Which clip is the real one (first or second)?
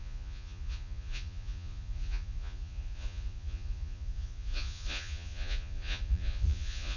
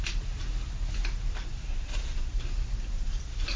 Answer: second